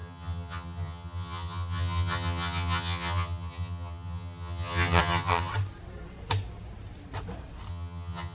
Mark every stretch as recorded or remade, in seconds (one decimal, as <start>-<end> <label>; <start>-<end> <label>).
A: 0.0-5.5 remade; 5.5-7.7 recorded; 7.7-8.3 remade